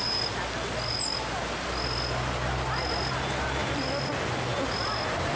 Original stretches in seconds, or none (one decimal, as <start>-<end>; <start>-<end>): 0.0-5.4